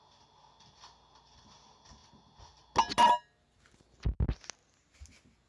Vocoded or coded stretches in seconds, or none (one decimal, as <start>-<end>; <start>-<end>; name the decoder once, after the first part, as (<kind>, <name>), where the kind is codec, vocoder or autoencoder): none